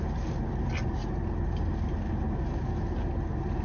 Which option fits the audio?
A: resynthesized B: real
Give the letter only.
B